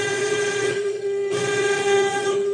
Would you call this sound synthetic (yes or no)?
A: yes